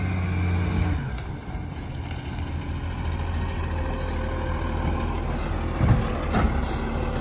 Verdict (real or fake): real